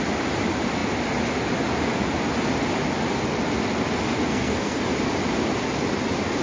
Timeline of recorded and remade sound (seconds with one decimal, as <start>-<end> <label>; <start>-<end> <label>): 0.0-4.3 recorded; 4.3-4.8 remade; 4.8-6.4 recorded